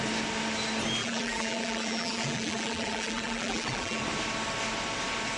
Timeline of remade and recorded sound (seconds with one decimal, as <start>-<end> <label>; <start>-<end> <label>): 0.0-1.0 recorded; 1.0-4.0 remade; 4.0-5.4 recorded